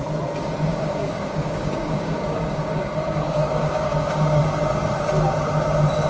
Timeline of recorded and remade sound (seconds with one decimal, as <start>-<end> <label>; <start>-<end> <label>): 0.0-0.7 recorded; 0.7-4.4 remade; 4.4-6.1 recorded

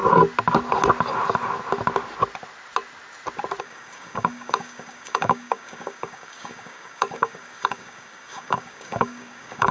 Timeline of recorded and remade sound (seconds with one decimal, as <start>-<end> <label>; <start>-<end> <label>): 0.0-3.6 recorded; 3.6-9.7 remade

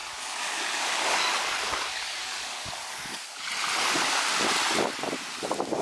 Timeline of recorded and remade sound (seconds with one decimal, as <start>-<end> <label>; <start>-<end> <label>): 0.0-3.5 remade; 3.5-5.8 recorded

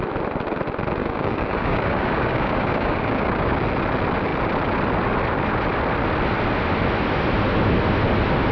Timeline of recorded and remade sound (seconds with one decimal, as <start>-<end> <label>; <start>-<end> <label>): 0.0-1.0 recorded; 1.0-3.5 remade; 3.5-8.5 recorded

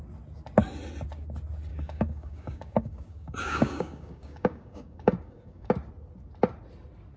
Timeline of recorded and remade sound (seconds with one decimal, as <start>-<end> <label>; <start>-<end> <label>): 0.0-1.7 recorded; 1.7-5.7 remade; 5.7-7.2 recorded